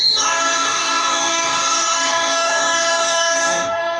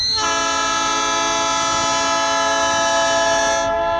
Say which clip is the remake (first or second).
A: first